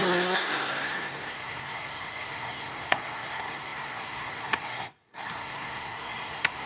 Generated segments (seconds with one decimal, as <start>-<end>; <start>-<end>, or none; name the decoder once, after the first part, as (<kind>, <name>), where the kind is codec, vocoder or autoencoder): 0.0-6.7 (codec, SNAC)

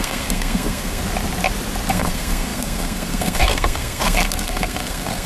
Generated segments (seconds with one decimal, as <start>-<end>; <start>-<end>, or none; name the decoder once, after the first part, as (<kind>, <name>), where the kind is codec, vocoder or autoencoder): 0.0-1.0 (codec, SNAC); 1.9-5.3

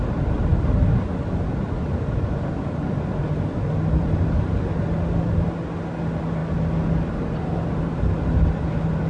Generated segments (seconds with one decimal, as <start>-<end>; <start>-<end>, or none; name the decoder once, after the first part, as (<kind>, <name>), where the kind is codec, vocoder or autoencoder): none

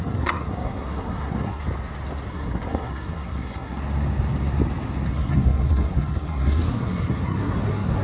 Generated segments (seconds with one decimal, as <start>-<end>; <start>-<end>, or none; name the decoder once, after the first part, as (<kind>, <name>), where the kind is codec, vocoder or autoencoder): 0.0-1.6 (codec, SNAC); 2.3-3.8; 5.1-8.0

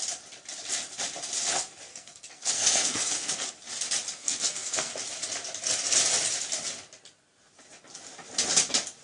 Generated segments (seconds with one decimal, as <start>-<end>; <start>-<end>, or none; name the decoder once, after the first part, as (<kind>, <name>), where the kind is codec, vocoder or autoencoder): 1.9-3.5 (codec, SNAC); 4.1-4.9